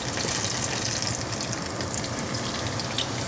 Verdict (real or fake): real